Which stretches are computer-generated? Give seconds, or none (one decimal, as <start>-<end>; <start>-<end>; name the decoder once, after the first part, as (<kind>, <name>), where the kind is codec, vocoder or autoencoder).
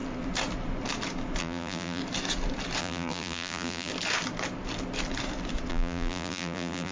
1.4-2.0 (vocoder, BigVGAN v2); 2.8-3.9; 5.7-6.9